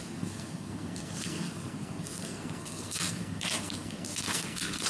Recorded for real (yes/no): no